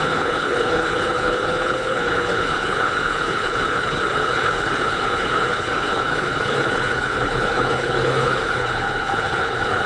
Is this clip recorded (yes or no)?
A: no